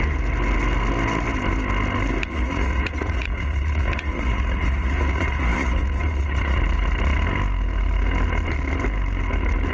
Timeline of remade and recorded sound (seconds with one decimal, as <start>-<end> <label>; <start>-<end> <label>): 0.0-2.3 recorded; 2.3-6.6 remade; 6.6-9.7 recorded